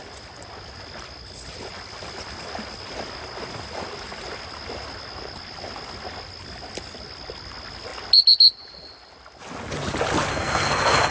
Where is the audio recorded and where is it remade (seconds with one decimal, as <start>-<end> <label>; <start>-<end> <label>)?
0.0-10.3 recorded; 10.3-11.1 remade